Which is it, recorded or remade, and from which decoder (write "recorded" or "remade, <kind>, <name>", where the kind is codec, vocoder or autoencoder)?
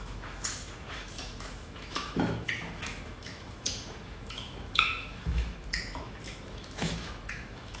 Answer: remade, autoencoder, DAC-VAE